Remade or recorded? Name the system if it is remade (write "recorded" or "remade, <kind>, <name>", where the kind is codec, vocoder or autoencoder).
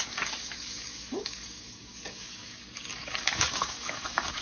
remade, codec, DAC